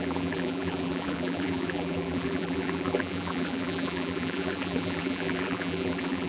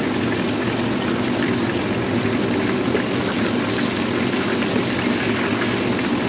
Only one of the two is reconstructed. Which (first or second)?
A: first